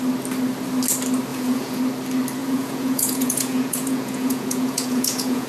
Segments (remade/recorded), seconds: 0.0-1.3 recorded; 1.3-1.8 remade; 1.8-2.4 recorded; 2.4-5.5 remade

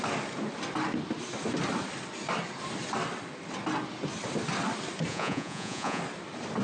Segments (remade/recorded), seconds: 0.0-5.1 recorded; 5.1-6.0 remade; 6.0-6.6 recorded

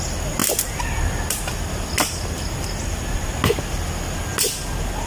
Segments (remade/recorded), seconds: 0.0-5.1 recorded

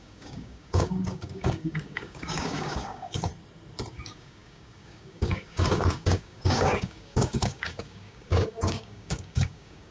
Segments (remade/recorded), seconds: 0.0-3.3 remade; 3.3-3.9 recorded; 3.9-9.9 remade

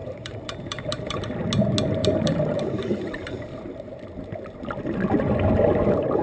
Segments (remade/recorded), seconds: 0.0-1.2 remade; 1.2-2.0 recorded; 2.0-3.9 remade; 3.9-6.2 recorded

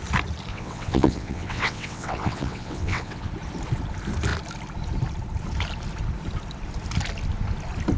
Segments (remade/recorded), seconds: 0.0-0.5 recorded; 0.5-3.3 remade; 3.3-8.0 recorded

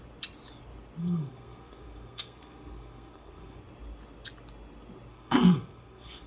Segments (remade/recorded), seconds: 0.0-1.0 recorded; 1.0-3.6 remade; 3.6-5.1 recorded; 5.1-6.3 remade